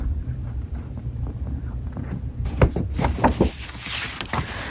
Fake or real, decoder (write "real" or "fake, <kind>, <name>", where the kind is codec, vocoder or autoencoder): fake, vocoder, BigVGAN v2